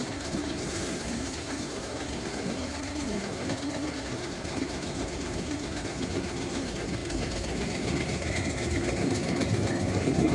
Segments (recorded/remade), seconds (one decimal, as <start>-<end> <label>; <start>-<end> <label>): 0.0-10.3 remade